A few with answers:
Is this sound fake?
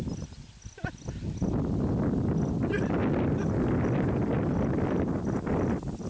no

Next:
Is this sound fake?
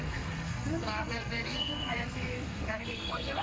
yes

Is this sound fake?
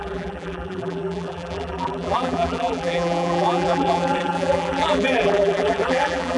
yes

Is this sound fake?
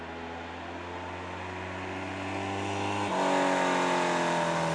no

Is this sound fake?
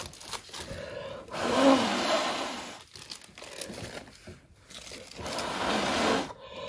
no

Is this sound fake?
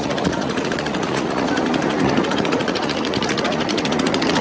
yes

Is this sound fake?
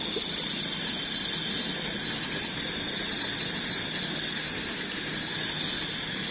no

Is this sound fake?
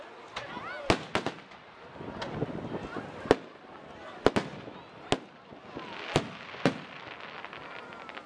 no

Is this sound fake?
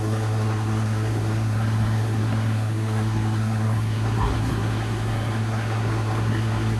yes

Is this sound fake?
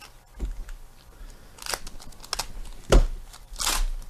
no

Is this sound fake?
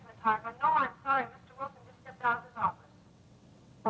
yes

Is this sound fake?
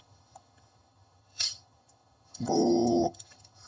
yes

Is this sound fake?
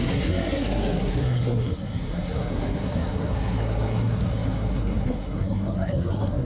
yes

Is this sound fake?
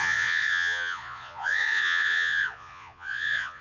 yes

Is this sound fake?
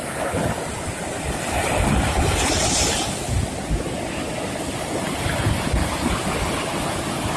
no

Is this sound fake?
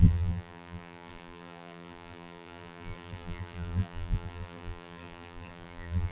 yes